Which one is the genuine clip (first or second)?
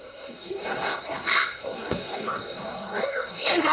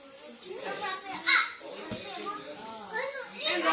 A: second